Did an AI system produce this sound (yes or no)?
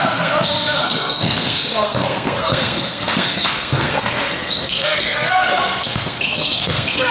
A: yes